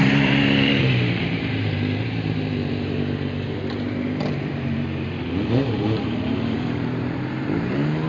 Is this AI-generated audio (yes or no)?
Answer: yes